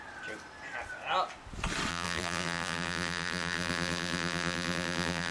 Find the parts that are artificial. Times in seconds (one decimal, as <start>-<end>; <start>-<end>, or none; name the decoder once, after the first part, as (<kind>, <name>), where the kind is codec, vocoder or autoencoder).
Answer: 1.9-5.3 (vocoder, BigVGAN v2)